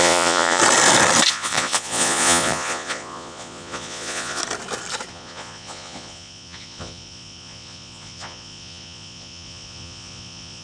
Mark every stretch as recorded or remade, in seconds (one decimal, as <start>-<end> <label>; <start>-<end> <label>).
0.0-0.6 remade; 0.6-1.3 recorded; 1.3-4.4 remade; 4.4-5.1 recorded; 5.1-10.6 remade